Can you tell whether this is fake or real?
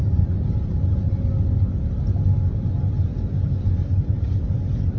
real